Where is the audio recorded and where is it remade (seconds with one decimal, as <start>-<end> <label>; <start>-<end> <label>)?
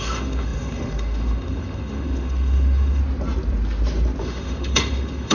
0.0-3.0 remade; 3.0-4.2 recorded; 4.2-5.3 remade